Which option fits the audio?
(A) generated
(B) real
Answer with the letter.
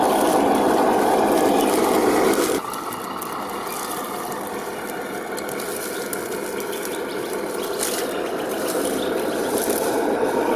B